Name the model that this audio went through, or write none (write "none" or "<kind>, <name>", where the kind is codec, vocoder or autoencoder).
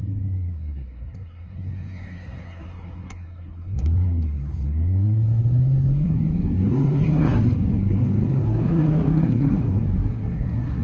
codec, SNAC